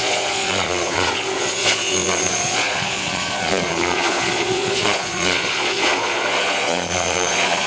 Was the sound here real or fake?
fake